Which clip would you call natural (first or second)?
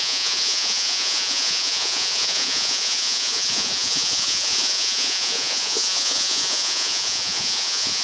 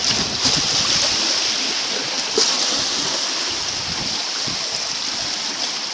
second